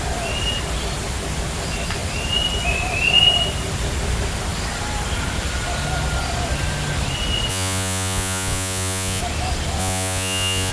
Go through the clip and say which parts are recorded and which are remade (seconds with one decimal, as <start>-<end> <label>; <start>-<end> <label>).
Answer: 0.0-7.5 recorded; 7.5-9.2 remade; 9.2-9.8 recorded; 9.8-10.7 remade